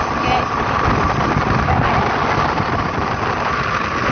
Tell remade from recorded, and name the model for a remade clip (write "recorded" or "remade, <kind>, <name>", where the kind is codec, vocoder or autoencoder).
recorded